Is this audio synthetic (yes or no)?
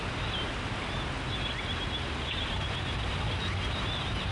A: no